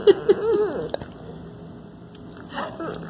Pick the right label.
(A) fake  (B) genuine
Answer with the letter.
B